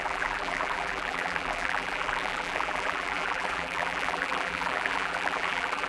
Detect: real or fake fake